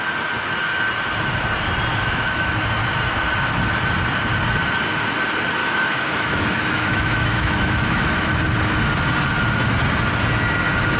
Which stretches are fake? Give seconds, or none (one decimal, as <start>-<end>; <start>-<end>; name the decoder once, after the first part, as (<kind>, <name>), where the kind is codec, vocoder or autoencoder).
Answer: 1.9-2.6 (autoencoder, DAC-VAE); 5.6-8.3